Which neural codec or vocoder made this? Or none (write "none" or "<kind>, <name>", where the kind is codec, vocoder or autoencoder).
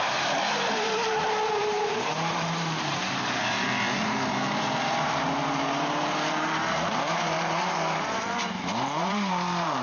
vocoder, BigVGAN v2